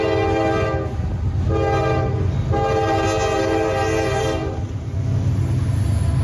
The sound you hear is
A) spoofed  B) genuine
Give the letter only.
B